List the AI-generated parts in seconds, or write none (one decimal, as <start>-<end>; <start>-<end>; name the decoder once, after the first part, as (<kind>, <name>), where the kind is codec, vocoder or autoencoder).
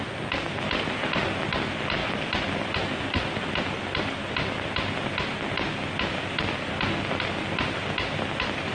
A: none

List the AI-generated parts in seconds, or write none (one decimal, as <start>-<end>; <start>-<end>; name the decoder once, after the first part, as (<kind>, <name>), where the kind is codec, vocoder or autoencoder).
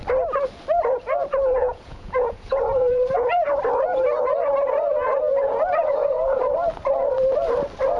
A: 1.6-3.5 (vocoder, Vocos); 5.8-6.4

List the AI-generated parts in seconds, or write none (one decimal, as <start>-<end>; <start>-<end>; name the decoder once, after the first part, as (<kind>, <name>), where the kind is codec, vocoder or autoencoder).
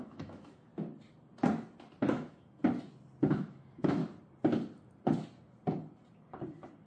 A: 0.0-0.7 (autoencoder, DAC-VAE); 2.0-2.6; 3.3-4.0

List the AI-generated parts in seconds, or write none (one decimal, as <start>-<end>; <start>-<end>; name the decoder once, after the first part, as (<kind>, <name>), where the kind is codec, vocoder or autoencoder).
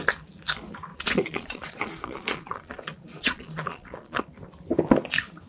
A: 0.9-4.2 (vocoder, Vocos)